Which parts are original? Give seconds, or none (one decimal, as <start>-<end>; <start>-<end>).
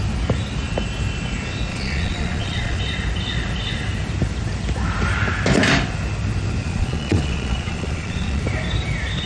0.0-1.7; 2.8-6.6; 8.4-9.3